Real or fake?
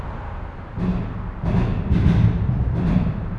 real